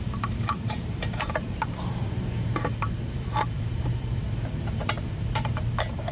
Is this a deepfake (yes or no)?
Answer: yes